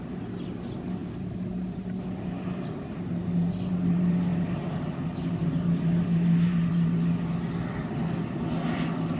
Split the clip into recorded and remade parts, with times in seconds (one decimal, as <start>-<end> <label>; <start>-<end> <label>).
0.0-9.2 recorded